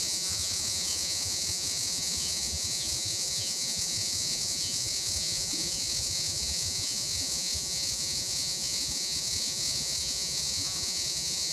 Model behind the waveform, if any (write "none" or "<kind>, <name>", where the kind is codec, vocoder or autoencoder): vocoder, Vocos